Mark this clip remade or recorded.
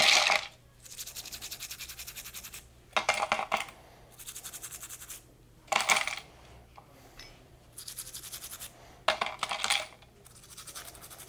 recorded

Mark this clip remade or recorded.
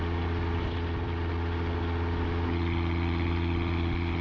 recorded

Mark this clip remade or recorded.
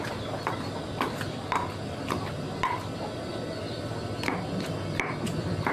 recorded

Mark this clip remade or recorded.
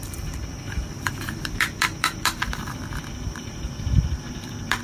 remade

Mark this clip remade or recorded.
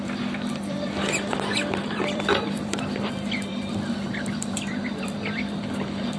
remade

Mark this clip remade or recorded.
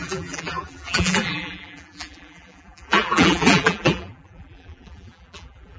remade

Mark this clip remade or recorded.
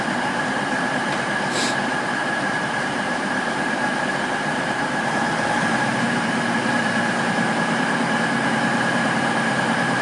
remade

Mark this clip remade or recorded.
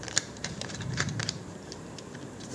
remade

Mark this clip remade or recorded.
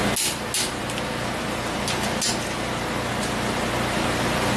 recorded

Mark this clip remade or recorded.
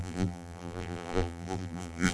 remade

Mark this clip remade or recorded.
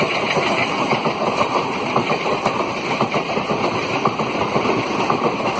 remade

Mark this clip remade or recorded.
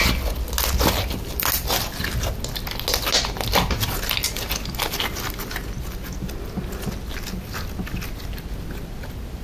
recorded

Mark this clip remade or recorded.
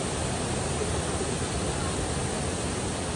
recorded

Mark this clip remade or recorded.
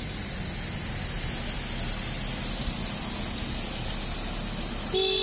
recorded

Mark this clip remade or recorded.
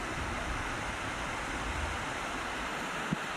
recorded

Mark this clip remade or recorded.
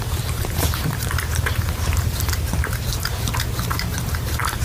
remade